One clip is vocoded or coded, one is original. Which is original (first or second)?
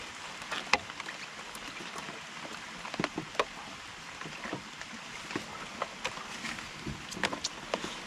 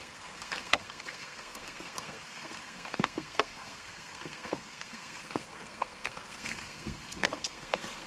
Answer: first